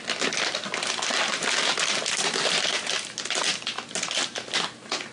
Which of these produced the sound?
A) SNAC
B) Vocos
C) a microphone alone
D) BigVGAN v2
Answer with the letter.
C